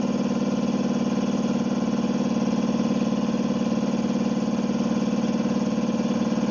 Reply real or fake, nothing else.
real